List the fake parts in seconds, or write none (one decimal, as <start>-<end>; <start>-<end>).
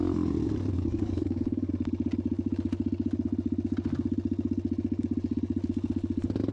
0.7-1.7